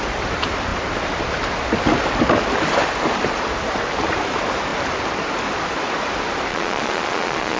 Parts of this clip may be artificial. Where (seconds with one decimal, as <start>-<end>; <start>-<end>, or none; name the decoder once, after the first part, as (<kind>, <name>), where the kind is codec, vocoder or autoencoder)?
6.5-7.6 (vocoder, Vocos)